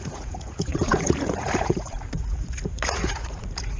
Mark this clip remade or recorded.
remade